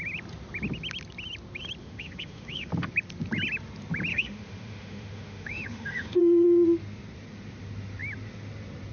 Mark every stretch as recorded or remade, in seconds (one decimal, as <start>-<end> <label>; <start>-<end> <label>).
0.0-1.8 recorded; 1.8-2.7 remade; 2.7-4.1 recorded; 4.1-6.2 remade; 6.2-8.9 recorded